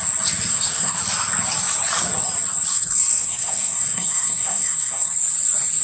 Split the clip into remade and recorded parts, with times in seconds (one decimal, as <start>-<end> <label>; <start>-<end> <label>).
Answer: 0.0-0.5 recorded; 0.5-1.0 remade; 1.0-2.7 recorded; 2.7-5.1 remade; 5.1-5.8 recorded